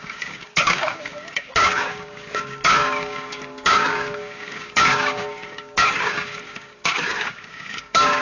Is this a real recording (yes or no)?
no